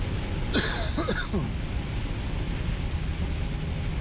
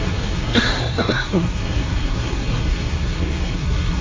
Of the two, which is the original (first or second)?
first